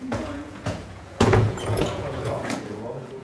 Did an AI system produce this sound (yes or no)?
yes